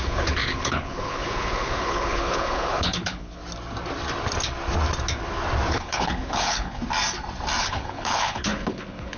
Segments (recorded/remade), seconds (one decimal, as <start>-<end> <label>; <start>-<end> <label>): 0.0-3.4 remade; 3.4-5.7 recorded; 5.7-6.8 remade; 6.8-7.6 recorded; 7.6-9.2 remade